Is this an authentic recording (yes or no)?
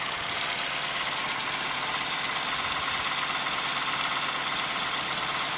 yes